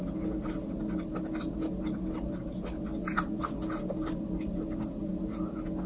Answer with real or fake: real